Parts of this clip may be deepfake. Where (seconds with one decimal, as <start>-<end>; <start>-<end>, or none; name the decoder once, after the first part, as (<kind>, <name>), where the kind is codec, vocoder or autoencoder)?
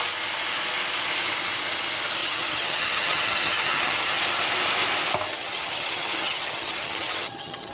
2.2-4.2 (vocoder, HiFi-GAN); 5.3-7.7